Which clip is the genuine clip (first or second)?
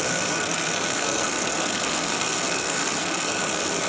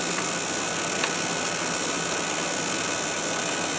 second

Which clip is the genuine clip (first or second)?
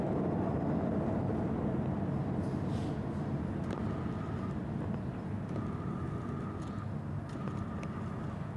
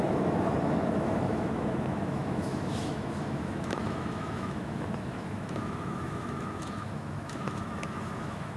first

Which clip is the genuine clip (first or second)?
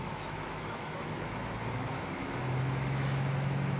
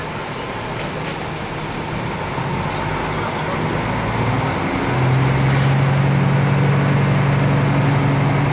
second